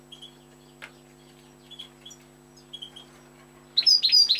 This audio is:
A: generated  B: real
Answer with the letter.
B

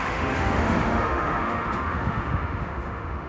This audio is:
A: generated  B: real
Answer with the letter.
A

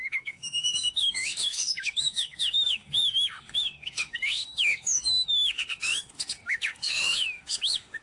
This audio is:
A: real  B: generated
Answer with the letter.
B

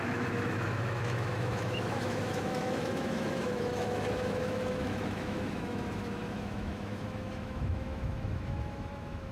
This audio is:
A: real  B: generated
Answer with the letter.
B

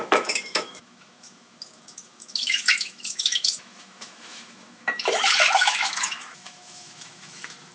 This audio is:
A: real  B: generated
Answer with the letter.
B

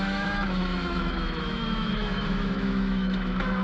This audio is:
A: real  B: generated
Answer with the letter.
B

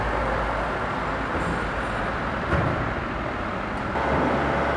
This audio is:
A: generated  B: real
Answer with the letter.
B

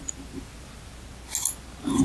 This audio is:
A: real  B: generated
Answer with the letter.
A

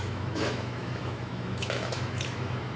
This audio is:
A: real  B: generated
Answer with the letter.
B